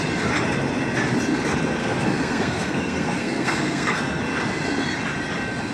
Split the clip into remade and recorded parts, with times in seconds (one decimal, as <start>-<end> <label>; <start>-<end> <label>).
0.0-1.8 recorded; 1.8-4.2 remade; 4.2-5.7 recorded